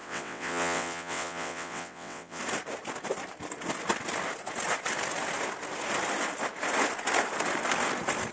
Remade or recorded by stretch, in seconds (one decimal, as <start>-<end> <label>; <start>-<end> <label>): 0.0-2.4 remade; 2.4-8.3 recorded